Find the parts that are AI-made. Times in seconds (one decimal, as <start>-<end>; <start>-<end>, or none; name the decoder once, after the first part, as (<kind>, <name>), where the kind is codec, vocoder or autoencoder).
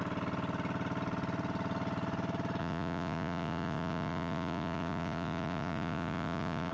2.6-6.7 (vocoder, Vocos)